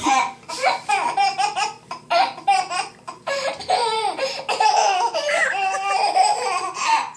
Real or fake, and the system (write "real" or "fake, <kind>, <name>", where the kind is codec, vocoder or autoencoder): fake, vocoder, BigVGAN v2